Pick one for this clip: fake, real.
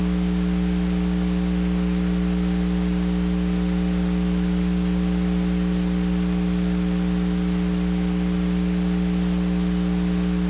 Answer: real